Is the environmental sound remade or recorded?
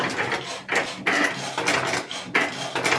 recorded